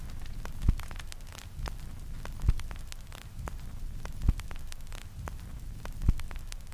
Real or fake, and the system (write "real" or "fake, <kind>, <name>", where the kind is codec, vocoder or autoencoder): fake, vocoder, BigVGAN v2